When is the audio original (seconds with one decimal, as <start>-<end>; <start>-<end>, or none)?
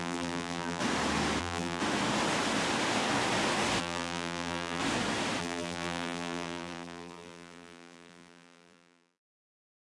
0.8-1.4; 1.8-3.8; 4.8-5.4